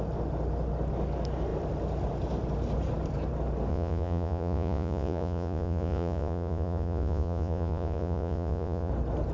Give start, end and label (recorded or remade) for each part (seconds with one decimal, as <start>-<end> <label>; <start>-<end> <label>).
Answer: 0.0-3.7 recorded; 3.7-8.9 remade; 8.9-9.3 recorded